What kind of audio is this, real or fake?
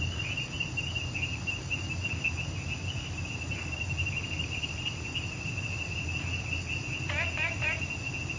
real